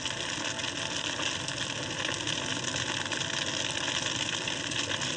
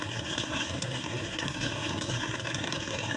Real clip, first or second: first